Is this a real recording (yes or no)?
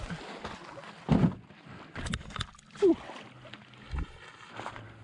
yes